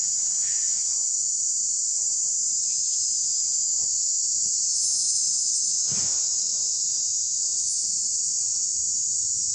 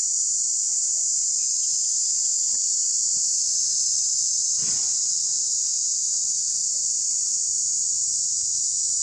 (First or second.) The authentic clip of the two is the second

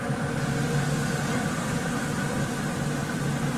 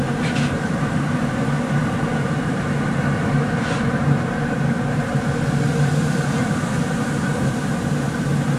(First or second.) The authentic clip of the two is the first